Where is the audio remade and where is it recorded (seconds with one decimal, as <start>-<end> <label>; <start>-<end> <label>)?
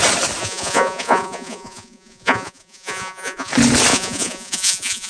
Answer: 0.0-0.4 recorded; 0.4-3.5 remade; 3.5-3.9 recorded; 3.9-5.1 remade